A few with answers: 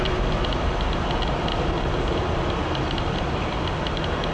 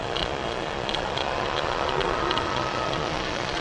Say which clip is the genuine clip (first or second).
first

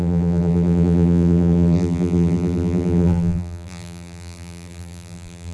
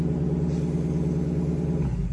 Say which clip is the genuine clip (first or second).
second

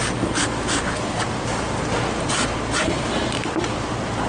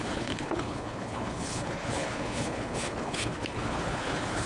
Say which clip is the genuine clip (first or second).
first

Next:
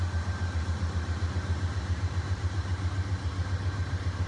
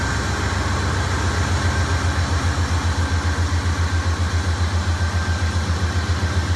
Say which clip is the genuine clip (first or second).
second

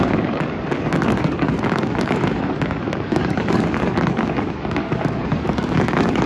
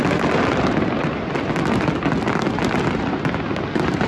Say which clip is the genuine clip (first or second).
second